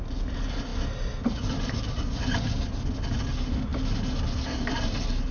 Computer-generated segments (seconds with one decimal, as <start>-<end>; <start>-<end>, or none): none